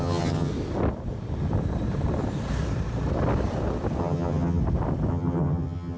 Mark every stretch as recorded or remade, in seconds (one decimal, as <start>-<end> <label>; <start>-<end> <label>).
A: 0.0-0.5 remade; 0.5-4.0 recorded; 4.0-4.6 remade; 4.6-5.1 recorded; 5.1-6.0 remade